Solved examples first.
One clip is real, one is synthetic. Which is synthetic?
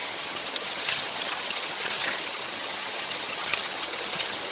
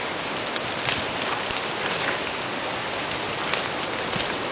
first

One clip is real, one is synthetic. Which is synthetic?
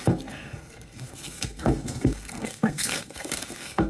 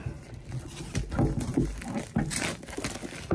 first